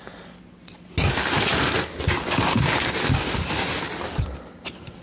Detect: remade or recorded recorded